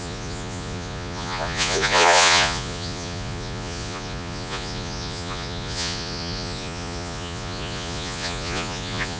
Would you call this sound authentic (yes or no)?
no